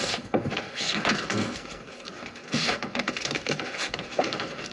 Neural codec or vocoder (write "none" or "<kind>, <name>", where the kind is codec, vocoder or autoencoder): codec, SNAC